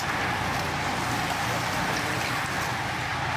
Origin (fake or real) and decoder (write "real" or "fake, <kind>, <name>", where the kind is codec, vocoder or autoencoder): real